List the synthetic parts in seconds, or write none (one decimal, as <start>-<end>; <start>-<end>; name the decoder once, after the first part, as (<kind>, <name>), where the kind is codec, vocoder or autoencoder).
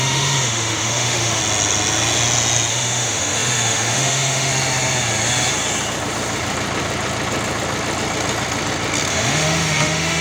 0.0-1.4 (autoencoder, DAC-VAE); 2.7-4.5; 9.1-10.2